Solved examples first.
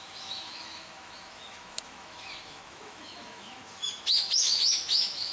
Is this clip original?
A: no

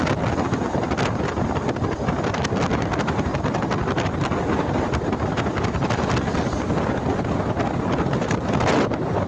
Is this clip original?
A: yes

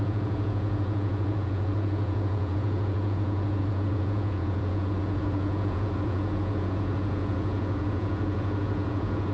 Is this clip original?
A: no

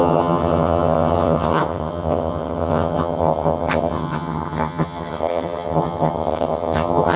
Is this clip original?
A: no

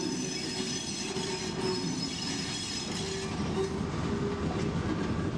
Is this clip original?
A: yes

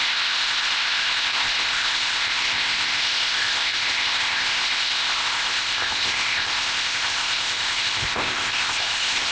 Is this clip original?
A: no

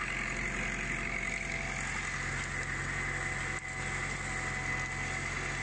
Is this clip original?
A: yes